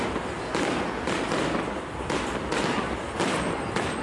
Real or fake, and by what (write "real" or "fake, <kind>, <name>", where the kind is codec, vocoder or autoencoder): real